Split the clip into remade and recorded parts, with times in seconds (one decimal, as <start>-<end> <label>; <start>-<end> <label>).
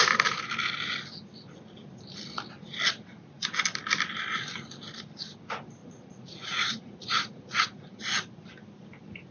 0.0-5.8 recorded; 5.8-8.0 remade; 8.0-9.3 recorded